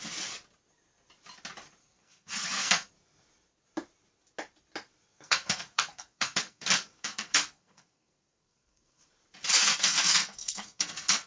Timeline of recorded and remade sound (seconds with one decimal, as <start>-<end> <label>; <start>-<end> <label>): 0.0-1.8 recorded; 1.8-2.9 remade; 2.9-5.1 recorded; 5.1-9.1 remade; 9.1-9.6 recorded; 9.6-11.3 remade